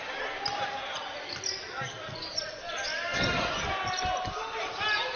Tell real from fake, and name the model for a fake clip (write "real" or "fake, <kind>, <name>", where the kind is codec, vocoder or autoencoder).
real